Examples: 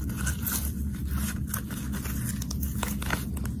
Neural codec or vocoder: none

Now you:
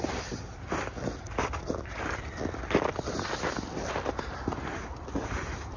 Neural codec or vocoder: none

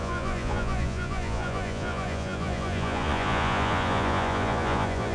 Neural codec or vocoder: vocoder, Vocos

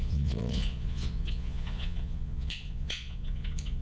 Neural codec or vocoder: vocoder, Vocos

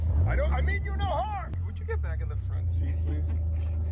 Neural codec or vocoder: none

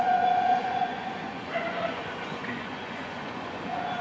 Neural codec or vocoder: vocoder, Vocos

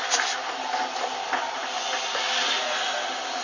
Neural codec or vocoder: none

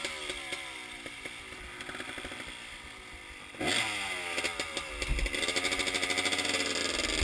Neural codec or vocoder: none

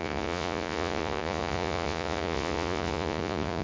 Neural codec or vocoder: vocoder, Vocos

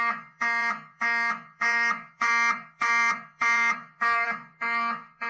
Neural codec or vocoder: vocoder, Vocos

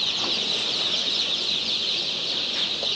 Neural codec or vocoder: vocoder, Vocos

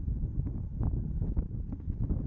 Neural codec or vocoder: none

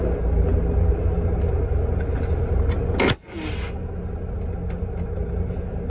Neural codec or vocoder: none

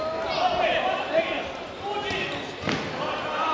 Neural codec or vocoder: none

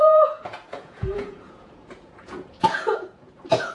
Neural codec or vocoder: vocoder, Vocos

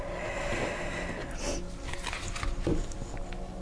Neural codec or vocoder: none